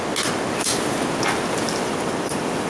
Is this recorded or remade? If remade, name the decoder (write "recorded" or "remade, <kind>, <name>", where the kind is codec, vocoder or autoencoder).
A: recorded